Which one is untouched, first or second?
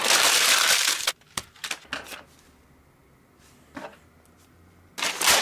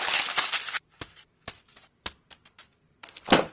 first